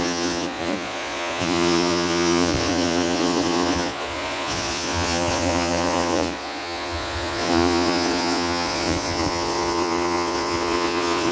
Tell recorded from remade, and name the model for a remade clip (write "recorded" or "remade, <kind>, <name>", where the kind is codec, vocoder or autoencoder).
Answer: remade, vocoder, Vocos